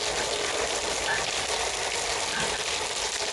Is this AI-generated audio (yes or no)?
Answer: no